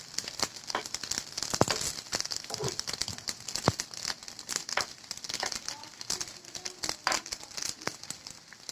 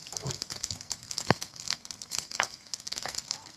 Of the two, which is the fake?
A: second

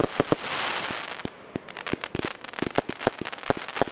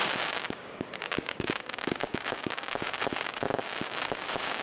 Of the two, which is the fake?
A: second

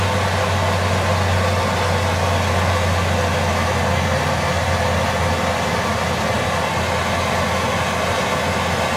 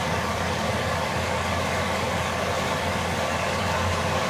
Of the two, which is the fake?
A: second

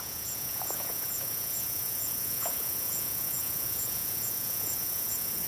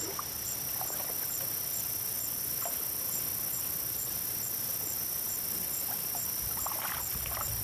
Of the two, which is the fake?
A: first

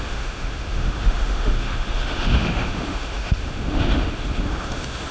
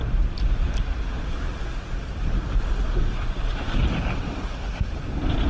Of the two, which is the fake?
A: first